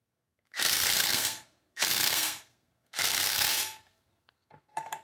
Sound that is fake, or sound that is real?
fake